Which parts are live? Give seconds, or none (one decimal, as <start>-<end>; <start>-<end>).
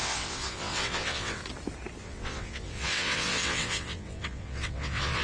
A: 1.4-2.0